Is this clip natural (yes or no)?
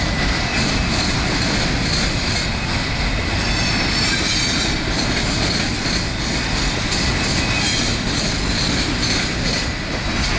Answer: yes